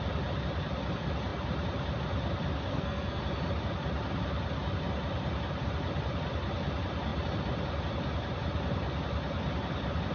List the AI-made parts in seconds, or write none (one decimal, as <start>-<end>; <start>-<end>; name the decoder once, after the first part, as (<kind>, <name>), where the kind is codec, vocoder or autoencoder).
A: 2.7-3.2 (codec, SNAC)